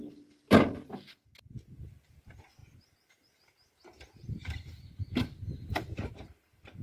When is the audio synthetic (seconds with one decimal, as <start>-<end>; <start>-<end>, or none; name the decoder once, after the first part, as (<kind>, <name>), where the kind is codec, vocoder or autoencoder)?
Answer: none

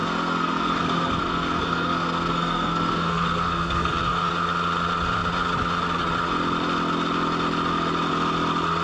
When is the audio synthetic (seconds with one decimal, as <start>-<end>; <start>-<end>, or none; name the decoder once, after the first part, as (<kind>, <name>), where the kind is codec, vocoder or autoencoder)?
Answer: 0.0-4.3 (codec, SNAC)

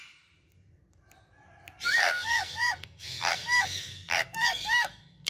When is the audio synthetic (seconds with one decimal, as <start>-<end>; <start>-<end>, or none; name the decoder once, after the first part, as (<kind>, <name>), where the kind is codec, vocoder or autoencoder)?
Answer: 2.0-5.3 (codec, SNAC)